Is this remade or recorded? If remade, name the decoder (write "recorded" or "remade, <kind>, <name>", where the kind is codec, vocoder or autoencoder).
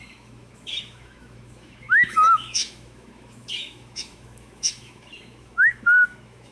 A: remade, autoencoder, DAC-VAE